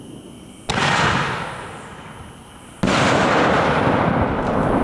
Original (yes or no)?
yes